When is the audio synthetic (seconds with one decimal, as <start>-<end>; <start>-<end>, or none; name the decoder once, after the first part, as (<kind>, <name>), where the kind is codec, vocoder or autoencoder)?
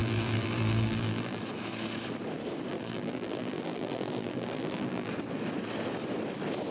0.0-1.4 (vocoder, BigVGAN v2); 2.7-5.1